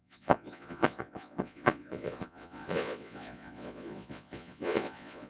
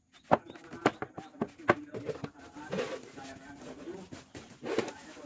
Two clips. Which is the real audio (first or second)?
second